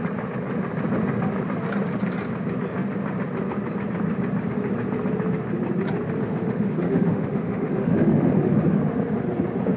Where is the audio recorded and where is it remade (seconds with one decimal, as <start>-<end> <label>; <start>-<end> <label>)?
0.0-6.2 recorded; 6.2-8.3 remade; 8.3-9.8 recorded